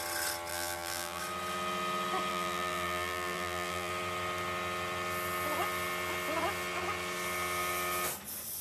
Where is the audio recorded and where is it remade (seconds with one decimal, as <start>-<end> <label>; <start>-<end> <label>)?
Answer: 0.0-0.5 recorded; 0.5-1.2 remade; 1.2-2.3 recorded; 2.3-3.9 remade; 3.9-8.6 recorded